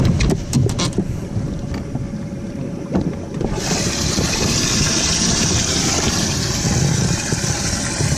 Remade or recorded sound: remade